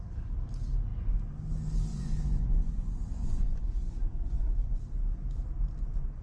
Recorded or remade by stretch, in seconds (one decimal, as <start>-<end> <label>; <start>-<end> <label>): 0.0-1.9 recorded; 1.9-4.8 remade; 4.8-6.2 recorded